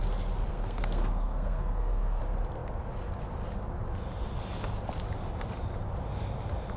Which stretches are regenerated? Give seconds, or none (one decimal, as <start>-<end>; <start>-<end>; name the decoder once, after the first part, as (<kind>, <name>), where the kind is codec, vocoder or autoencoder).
0.5-2.2 (codec, SNAC)